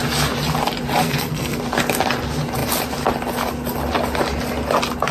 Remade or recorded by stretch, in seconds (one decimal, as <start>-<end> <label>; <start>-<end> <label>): 0.0-1.0 recorded; 1.0-1.6 remade; 1.6-5.1 recorded

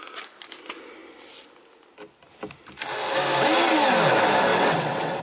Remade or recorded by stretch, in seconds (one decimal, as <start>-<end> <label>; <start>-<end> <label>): 0.0-4.5 recorded; 4.5-5.2 remade

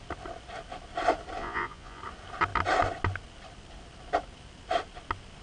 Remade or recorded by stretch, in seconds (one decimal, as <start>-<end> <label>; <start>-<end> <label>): 0.0-1.4 recorded; 1.4-2.0 remade; 2.0-5.4 recorded